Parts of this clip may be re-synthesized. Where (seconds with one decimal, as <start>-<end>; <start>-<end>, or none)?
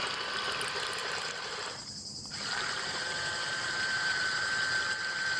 1.0-1.7; 2.1-5.4